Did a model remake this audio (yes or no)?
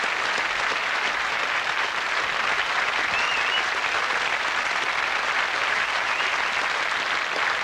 no